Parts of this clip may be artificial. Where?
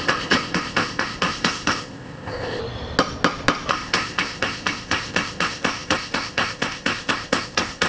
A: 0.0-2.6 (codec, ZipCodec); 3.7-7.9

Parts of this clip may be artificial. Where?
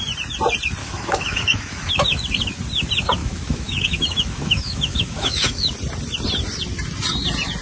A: 0.8-1.9 (autoencoder, DAC-VAE); 3.2-5.7